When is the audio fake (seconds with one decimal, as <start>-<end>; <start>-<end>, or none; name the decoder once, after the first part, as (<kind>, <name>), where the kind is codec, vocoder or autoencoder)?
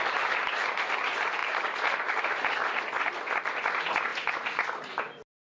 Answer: none